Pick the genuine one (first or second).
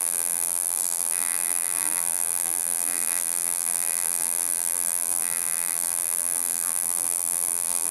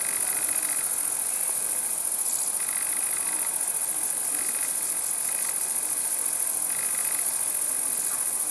second